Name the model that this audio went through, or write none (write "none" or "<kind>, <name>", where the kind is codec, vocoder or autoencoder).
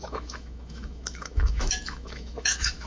autoencoder, DAC-VAE